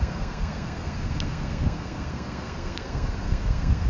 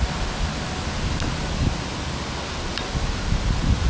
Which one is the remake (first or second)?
first